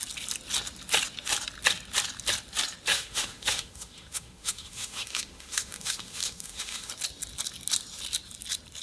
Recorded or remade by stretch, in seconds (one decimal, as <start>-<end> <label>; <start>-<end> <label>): 0.0-2.9 recorded; 2.9-6.9 remade; 6.9-8.8 recorded